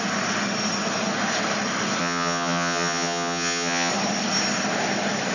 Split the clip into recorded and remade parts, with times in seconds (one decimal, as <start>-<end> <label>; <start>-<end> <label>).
0.0-2.0 recorded; 2.0-3.9 remade; 3.9-5.3 recorded